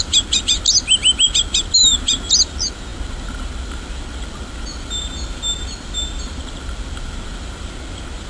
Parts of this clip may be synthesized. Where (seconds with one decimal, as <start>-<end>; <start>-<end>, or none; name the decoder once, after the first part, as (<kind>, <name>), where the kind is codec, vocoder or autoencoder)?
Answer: none